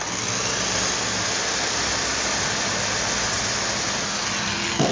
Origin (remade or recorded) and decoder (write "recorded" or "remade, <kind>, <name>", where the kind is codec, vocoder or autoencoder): recorded